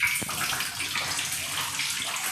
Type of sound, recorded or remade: recorded